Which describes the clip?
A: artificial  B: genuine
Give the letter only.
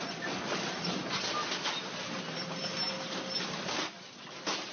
B